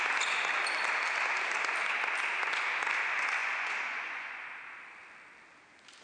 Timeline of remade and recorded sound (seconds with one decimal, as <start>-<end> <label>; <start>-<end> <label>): 0.0-3.4 recorded; 3.4-4.4 remade; 4.4-6.0 recorded